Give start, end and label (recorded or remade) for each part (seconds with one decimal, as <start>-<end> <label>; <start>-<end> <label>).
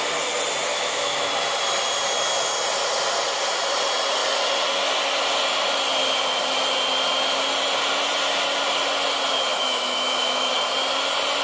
0.0-0.7 recorded; 0.7-1.3 remade; 1.3-9.5 recorded; 9.5-10.5 remade; 10.5-11.4 recorded